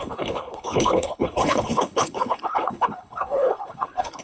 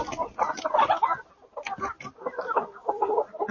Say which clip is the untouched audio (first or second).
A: second